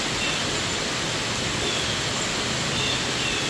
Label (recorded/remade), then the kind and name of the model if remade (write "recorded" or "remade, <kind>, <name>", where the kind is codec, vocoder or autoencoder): recorded